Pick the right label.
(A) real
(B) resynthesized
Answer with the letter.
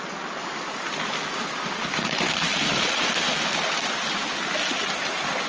A